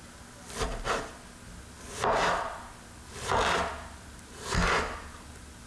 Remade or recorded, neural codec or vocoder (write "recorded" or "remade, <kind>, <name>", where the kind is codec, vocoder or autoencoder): recorded